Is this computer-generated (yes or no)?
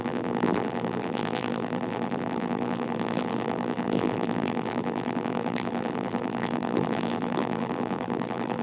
yes